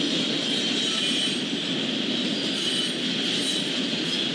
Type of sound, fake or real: real